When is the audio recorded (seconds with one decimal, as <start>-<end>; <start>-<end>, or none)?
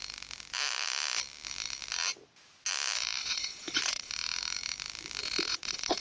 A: 0.0-3.2; 4.1-5.2